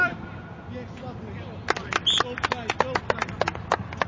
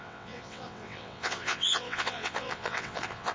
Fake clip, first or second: second